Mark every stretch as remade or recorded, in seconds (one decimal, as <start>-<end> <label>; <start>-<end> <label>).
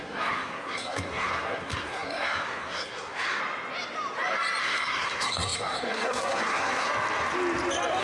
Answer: 0.0-3.4 remade; 3.4-4.6 recorded; 4.6-6.9 remade; 6.9-8.0 recorded